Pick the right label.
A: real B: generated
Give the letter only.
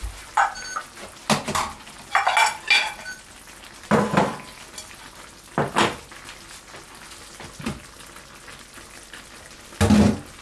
A